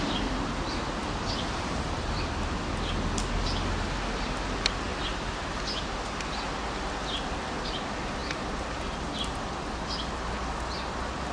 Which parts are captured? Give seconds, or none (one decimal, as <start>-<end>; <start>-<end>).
0.0-11.3

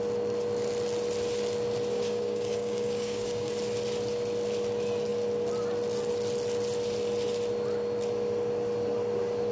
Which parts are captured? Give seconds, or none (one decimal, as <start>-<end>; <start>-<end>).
0.0-1.9; 3.5-9.5